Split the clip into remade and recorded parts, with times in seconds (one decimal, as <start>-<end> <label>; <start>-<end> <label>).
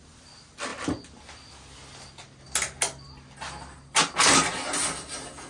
0.0-5.5 recorded